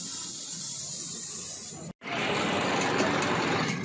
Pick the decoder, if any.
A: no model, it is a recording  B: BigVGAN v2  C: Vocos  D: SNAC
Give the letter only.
A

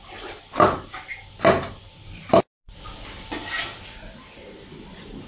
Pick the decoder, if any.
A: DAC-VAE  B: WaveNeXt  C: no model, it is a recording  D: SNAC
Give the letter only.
C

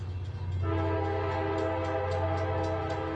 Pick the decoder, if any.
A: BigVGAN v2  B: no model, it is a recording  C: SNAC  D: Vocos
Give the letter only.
B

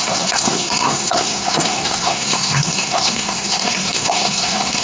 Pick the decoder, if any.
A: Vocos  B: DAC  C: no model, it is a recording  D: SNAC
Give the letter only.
D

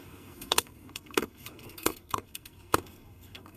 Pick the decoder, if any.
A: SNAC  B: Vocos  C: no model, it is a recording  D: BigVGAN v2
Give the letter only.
A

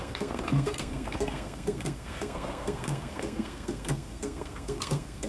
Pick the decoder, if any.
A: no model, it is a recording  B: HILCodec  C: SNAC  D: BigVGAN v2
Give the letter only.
C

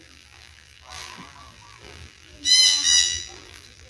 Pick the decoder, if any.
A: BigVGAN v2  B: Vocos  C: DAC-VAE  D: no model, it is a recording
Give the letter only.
A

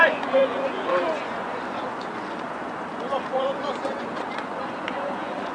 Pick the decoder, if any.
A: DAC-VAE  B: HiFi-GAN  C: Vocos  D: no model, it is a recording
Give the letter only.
C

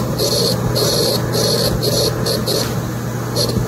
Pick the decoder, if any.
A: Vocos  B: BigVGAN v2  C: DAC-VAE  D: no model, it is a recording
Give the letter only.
D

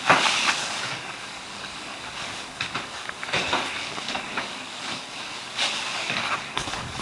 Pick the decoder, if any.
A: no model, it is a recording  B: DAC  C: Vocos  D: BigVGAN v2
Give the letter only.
B